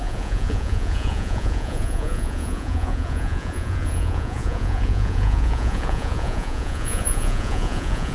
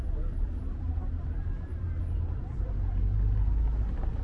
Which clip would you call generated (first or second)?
first